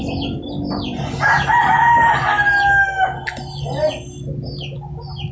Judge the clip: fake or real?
real